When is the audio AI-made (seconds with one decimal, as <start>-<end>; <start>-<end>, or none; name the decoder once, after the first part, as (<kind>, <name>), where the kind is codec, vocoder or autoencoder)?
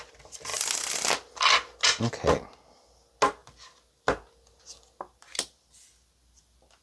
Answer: none